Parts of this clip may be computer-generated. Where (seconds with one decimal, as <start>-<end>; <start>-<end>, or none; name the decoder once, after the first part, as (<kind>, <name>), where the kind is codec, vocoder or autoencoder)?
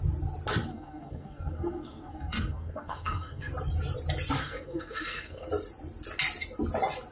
0.7-3.5 (codec, SNAC); 4.4-5.5